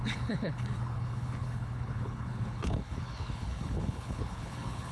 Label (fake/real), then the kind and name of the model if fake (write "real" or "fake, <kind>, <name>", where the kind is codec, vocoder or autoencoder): fake, codec, HILCodec